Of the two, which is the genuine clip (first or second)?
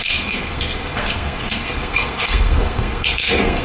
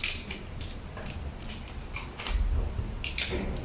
second